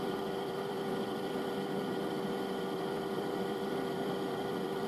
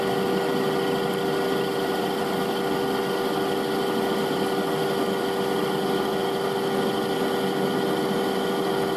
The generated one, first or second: first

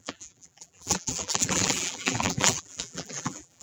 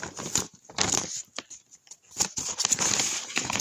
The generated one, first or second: first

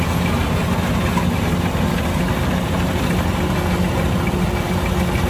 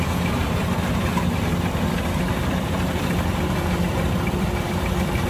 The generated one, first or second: second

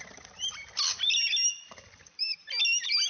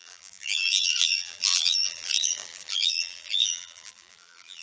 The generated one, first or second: second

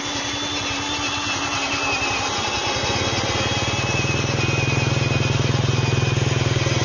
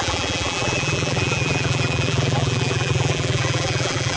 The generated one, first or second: second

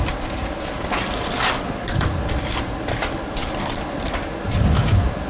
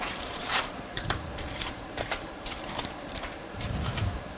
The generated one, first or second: second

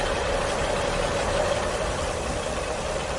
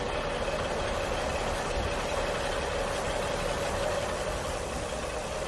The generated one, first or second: first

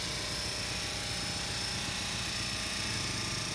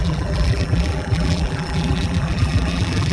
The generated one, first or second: second